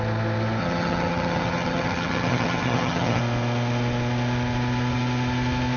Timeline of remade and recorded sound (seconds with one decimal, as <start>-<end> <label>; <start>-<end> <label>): 0.0-0.6 recorded; 0.6-3.2 remade; 3.2-5.8 recorded